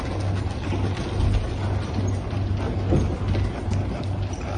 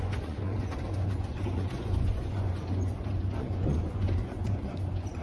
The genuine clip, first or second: first